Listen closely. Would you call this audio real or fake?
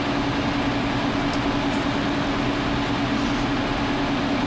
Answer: real